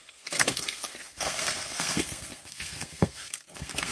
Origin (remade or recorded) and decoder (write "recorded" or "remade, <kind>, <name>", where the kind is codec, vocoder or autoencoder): remade, codec, SNAC